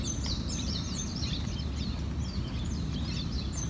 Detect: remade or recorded recorded